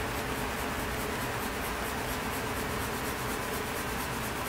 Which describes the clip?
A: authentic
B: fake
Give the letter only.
A